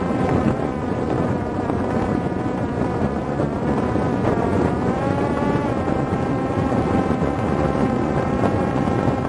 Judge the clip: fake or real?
fake